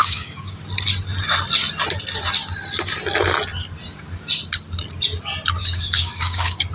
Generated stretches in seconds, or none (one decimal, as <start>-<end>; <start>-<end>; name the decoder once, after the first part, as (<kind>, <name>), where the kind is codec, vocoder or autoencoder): 0.0-0.6 (codec, DAC); 5.6-6.7